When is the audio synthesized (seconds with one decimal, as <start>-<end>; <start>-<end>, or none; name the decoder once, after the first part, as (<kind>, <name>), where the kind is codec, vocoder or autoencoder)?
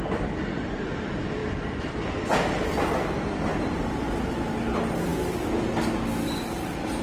1.4-2.9 (vocoder, BigVGAN v2); 3.5-4.3